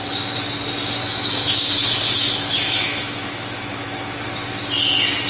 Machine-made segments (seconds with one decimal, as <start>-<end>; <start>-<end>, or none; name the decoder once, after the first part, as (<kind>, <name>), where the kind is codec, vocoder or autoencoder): 1.0-4.2 (autoencoder, DAC-VAE)